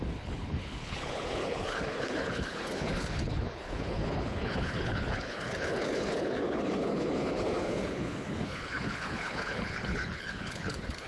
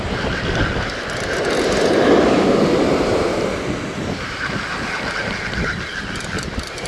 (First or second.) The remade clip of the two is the first